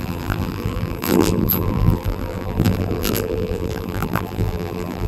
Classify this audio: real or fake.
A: fake